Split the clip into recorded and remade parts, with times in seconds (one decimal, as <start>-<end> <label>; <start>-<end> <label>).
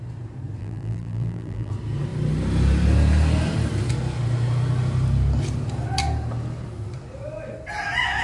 0.0-0.6 recorded; 0.6-1.7 remade; 1.7-8.2 recorded